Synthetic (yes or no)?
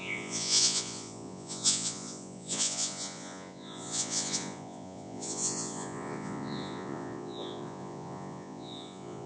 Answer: yes